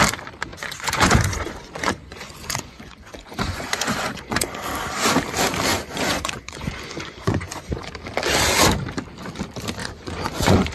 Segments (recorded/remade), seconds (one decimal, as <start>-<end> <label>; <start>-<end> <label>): 0.0-0.5 recorded; 0.5-4.6 remade; 4.6-5.7 recorded; 5.7-7.9 remade; 7.9-9.8 recorded; 9.8-10.7 remade